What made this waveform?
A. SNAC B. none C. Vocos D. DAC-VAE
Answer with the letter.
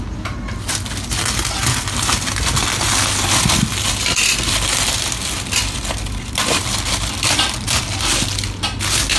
B